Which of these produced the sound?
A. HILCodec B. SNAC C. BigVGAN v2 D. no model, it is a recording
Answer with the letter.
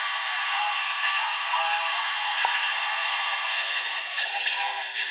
B